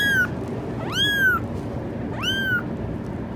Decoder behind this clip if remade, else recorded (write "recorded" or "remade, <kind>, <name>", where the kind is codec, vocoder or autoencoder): recorded